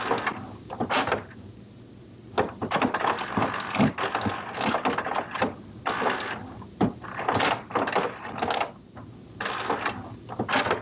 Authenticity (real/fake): real